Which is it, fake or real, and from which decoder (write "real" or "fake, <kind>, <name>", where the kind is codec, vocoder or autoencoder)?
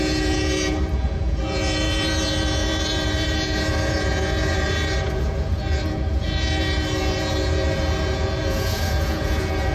fake, vocoder, Vocos